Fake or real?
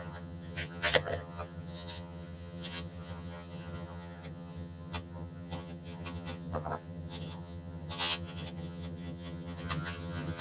fake